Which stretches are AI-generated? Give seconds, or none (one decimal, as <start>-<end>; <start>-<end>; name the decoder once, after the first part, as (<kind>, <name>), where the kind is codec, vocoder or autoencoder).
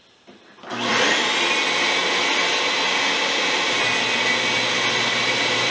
none